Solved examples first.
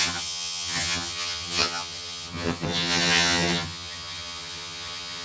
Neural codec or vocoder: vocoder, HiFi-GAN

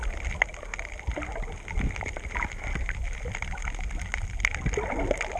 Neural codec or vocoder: none